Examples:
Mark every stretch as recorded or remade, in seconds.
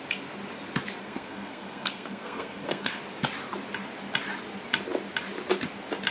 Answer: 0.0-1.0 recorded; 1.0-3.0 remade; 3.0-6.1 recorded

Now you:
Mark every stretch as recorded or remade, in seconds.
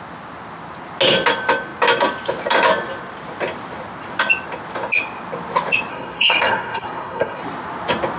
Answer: 0.0-5.9 recorded; 5.9-7.4 remade; 7.4-8.2 recorded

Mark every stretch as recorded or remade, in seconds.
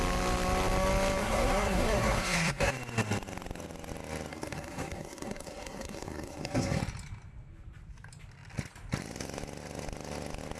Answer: 0.0-1.2 recorded; 1.2-2.7 remade; 2.7-4.3 recorded; 4.3-6.8 remade; 6.8-10.6 recorded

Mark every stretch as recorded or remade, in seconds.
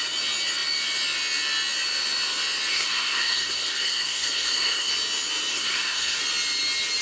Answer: 0.0-2.7 recorded; 2.7-4.9 remade; 4.9-5.5 recorded; 5.5-6.2 remade; 6.2-7.0 recorded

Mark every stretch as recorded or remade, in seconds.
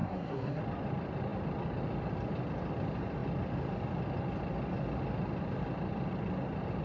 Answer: 0.0-0.6 remade; 0.6-6.8 recorded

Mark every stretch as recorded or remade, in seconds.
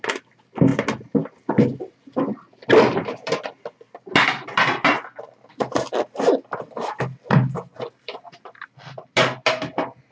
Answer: 0.0-10.1 recorded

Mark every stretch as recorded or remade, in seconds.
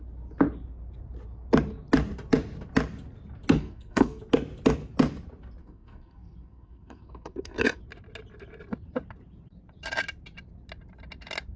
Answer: 0.0-3.6 recorded; 3.6-4.2 remade; 4.2-5.6 recorded; 5.6-7.8 remade; 7.8-11.6 recorded